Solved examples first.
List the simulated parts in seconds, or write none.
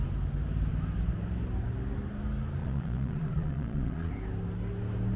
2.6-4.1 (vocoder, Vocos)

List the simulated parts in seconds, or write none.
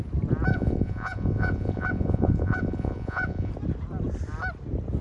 0.5-3.5 (vocoder, Vocos)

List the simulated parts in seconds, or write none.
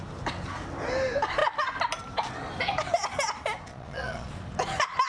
3.7-4.3 (vocoder, Vocos)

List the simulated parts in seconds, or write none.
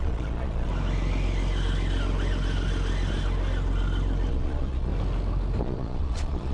0.0-0.7 (vocoder, Vocos); 4.3-4.9; 5.6-6.5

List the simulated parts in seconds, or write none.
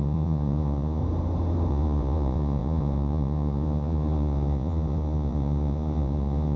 0.0-1.0 (vocoder, Vocos); 1.7-6.6